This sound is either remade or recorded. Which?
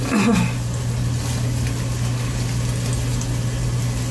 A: recorded